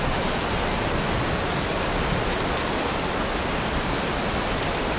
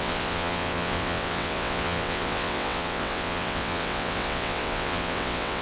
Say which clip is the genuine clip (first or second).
first